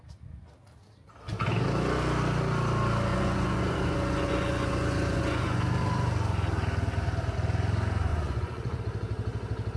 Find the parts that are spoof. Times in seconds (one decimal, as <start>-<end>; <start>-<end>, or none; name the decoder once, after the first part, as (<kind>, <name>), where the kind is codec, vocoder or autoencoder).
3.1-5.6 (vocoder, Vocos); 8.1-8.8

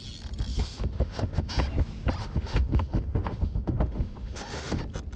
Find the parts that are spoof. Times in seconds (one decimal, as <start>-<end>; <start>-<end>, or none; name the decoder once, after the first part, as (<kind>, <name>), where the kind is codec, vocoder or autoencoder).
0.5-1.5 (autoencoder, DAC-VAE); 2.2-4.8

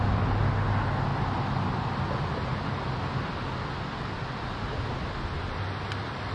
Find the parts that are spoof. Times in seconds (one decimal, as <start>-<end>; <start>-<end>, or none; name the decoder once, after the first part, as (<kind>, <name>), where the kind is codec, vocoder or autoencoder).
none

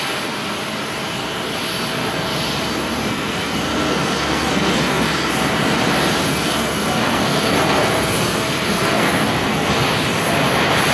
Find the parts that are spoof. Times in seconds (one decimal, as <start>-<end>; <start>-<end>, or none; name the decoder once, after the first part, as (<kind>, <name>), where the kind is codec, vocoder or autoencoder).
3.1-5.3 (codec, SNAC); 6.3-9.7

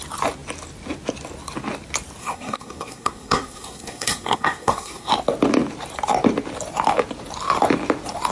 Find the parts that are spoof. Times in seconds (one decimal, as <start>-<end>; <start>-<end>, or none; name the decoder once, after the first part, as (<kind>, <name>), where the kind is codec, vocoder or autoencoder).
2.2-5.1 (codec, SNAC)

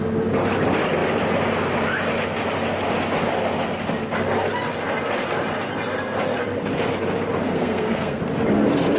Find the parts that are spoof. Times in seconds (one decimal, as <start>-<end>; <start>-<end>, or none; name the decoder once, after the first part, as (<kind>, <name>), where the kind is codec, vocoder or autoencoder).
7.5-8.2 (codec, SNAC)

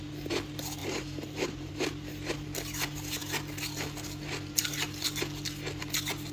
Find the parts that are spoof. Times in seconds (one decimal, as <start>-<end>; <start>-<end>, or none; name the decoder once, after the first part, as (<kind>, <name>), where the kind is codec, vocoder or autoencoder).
0.8-1.7 (vocoder, BigVGAN v2)